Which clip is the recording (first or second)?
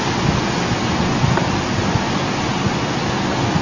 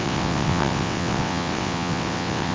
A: first